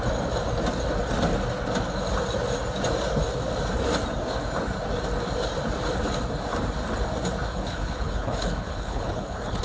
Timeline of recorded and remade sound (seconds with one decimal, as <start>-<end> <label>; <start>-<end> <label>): 0.0-7.5 recorded; 7.5-9.6 remade